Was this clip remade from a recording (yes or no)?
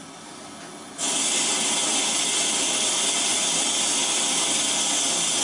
no